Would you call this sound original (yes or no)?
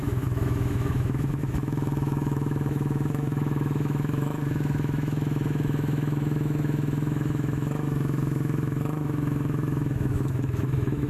no